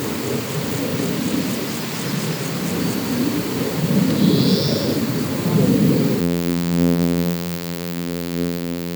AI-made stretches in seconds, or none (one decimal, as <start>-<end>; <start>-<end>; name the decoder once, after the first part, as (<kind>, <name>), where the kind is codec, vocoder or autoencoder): 6.2-9.0 (vocoder, BigVGAN v2)